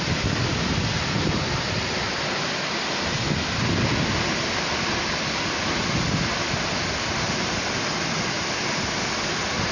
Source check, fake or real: real